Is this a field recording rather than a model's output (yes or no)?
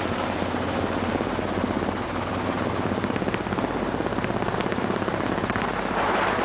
yes